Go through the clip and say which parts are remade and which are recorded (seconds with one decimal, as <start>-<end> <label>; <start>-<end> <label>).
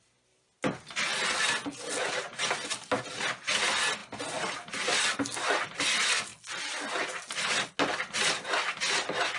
0.0-9.4 recorded